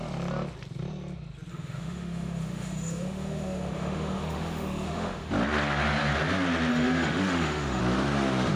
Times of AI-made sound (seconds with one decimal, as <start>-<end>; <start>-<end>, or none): 1.5-5.3; 6.7-7.8